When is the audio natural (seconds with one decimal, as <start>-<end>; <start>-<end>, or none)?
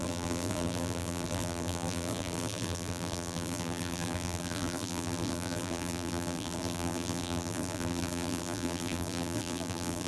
none